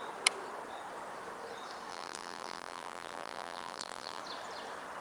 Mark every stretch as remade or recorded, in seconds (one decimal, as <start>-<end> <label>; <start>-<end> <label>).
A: 0.0-1.9 recorded; 1.9-4.2 remade; 4.2-5.0 recorded

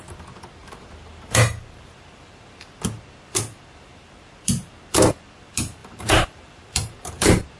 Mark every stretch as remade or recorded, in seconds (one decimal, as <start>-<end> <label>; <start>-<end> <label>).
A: 0.0-0.6 recorded; 0.6-2.6 remade; 2.6-3.9 recorded; 3.9-4.7 remade; 4.7-5.8 recorded; 5.8-7.6 remade